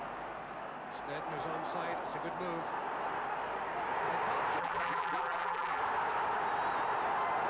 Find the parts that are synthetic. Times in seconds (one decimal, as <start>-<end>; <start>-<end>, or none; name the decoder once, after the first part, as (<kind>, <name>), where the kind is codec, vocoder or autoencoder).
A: 4.6-5.8 (vocoder, BigVGAN v2)